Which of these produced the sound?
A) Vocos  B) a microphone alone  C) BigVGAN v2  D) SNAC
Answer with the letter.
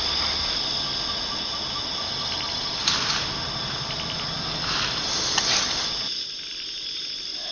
B